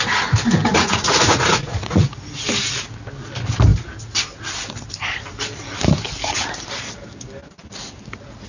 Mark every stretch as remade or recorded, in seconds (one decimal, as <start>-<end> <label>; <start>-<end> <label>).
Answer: 0.0-0.7 recorded; 0.7-2.0 remade; 2.0-8.5 recorded